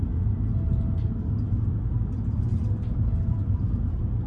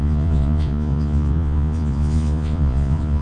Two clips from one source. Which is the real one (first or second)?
first